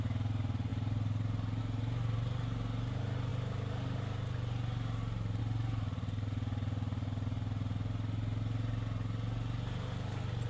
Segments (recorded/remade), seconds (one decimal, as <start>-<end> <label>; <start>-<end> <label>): 0.0-10.5 recorded